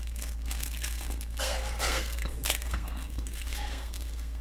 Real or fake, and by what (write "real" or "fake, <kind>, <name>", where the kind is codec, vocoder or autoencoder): fake, codec, SNAC